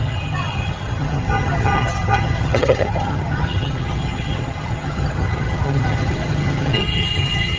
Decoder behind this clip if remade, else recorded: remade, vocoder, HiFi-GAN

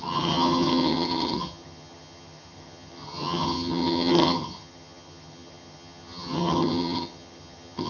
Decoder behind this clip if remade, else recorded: remade, vocoder, HiFi-GAN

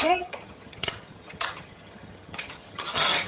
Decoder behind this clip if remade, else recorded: remade, vocoder, HiFi-GAN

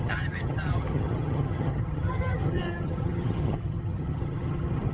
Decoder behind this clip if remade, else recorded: remade, vocoder, HiFi-GAN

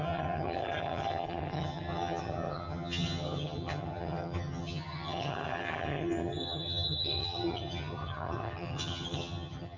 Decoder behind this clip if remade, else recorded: remade, vocoder, HiFi-GAN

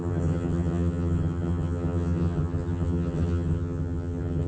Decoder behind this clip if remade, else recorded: remade, vocoder, HiFi-GAN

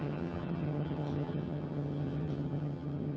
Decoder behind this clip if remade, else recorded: remade, vocoder, HiFi-GAN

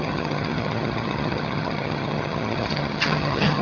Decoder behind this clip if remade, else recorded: remade, vocoder, HiFi-GAN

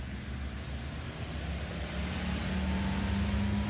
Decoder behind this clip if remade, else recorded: recorded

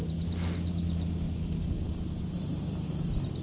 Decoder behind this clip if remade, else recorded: recorded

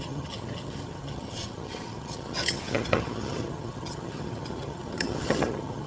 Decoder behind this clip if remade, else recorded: remade, vocoder, HiFi-GAN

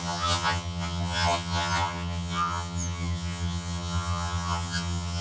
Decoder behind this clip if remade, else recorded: remade, vocoder, HiFi-GAN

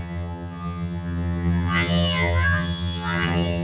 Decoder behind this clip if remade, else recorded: remade, vocoder, HiFi-GAN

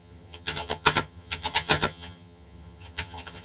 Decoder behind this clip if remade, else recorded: remade, vocoder, HiFi-GAN